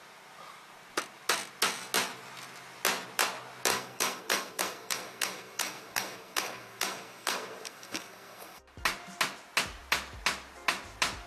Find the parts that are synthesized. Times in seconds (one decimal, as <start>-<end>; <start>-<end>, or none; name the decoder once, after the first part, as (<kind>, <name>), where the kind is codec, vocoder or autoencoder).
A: 3.7-8.6 (codec, SNAC)